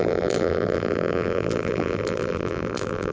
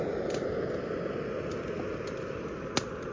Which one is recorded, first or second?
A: second